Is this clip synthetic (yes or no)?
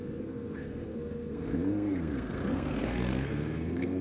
yes